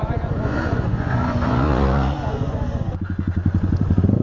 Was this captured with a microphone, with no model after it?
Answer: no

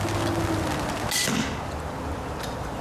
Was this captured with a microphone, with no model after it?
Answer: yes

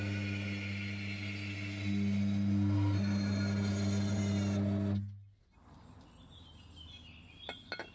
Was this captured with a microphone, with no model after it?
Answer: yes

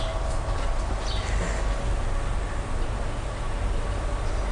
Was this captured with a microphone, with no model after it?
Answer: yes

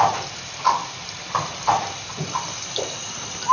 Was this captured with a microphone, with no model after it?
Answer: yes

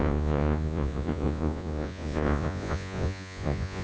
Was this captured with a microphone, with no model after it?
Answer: no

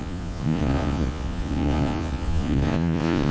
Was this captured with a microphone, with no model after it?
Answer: no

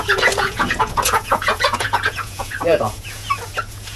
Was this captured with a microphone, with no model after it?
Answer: no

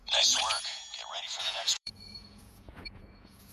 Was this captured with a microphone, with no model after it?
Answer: no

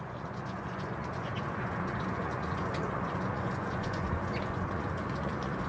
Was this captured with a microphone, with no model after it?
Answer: no